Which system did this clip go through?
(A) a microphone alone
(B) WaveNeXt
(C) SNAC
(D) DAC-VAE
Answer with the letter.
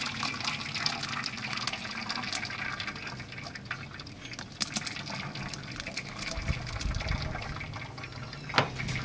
A